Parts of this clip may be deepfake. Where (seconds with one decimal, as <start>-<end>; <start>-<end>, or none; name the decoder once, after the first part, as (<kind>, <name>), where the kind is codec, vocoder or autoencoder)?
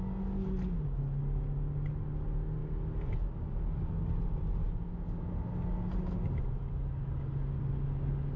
none